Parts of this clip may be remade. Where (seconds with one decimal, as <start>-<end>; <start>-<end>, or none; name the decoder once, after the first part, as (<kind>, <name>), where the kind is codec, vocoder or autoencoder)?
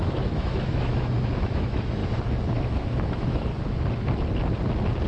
0.0-2.0 (autoencoder, DAC-VAE); 2.6-3.5